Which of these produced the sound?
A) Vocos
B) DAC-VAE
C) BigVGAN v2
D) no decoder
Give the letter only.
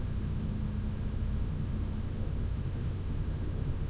B